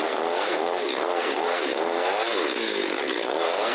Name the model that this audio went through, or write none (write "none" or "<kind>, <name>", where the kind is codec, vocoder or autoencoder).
codec, SNAC